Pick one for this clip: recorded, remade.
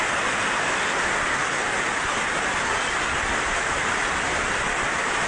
recorded